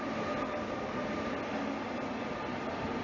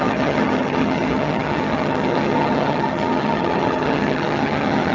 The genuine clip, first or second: first